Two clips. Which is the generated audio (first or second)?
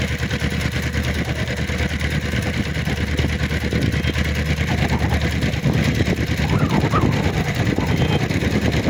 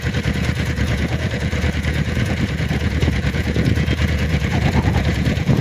second